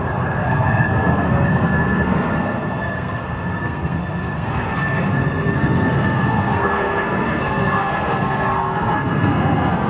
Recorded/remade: remade